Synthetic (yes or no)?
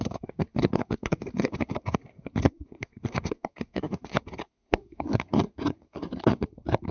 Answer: yes